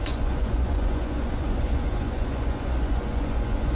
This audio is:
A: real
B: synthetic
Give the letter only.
B